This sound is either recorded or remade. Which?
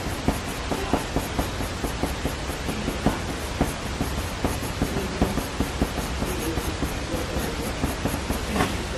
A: recorded